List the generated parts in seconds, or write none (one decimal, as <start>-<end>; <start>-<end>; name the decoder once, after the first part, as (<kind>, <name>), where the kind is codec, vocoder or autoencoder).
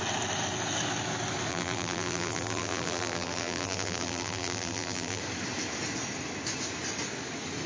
1.5-5.2 (vocoder, BigVGAN v2)